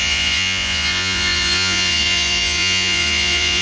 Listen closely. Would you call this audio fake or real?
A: fake